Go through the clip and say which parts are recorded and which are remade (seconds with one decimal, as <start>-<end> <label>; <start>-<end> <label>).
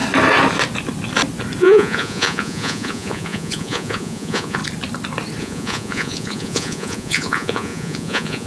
0.0-1.6 recorded; 1.6-4.6 remade; 4.6-5.4 recorded; 5.4-8.5 remade